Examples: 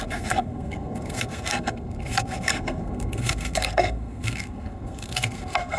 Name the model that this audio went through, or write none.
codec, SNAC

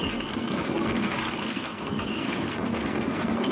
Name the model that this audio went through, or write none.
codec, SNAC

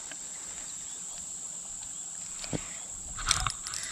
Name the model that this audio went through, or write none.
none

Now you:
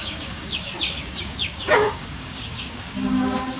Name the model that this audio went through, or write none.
codec, DAC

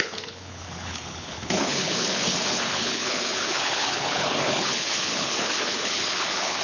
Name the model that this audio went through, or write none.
codec, HILCodec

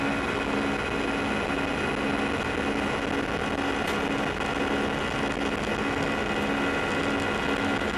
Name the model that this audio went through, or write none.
none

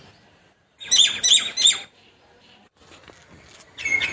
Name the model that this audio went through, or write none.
none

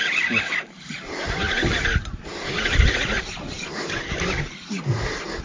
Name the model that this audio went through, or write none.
none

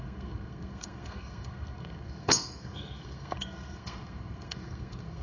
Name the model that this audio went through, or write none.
codec, SNAC